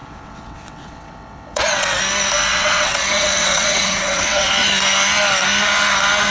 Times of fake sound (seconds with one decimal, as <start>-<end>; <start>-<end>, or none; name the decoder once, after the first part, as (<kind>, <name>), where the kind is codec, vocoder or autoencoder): 0.0-2.0 (vocoder, WaveNeXt); 2.5-4.5